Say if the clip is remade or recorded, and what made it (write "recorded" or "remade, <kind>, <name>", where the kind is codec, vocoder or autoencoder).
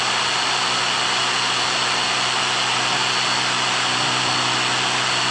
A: recorded